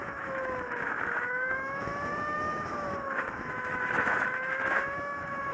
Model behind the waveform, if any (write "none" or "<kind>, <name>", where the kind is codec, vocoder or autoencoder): autoencoder, DAC-VAE